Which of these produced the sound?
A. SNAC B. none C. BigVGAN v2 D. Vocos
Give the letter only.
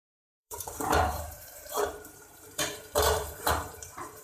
C